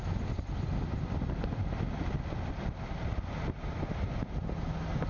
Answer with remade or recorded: recorded